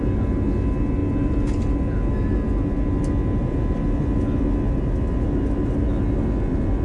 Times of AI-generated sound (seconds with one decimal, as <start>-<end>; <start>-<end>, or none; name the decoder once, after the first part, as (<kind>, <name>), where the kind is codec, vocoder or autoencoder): none